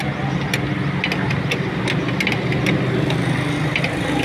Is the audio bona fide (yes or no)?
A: yes